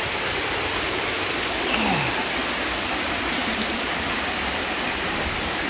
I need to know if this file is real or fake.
real